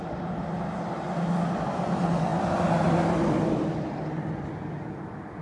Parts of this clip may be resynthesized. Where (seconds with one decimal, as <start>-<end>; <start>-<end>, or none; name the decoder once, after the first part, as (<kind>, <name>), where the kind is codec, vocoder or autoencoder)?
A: 0.0-5.4 (vocoder, BigVGAN v2)